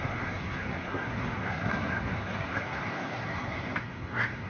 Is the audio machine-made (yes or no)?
yes